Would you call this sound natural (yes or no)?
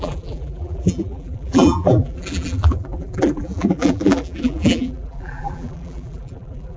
no